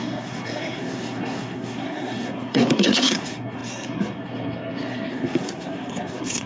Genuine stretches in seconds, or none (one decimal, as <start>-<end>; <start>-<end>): none